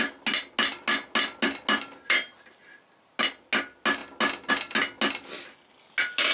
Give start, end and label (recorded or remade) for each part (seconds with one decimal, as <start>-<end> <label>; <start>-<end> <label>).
0.0-6.3 recorded